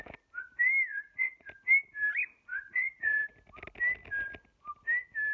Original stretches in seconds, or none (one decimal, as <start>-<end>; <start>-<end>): 0.0-0.9; 1.5-2.5; 3.3-5.3